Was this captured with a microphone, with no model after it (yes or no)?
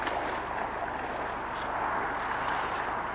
yes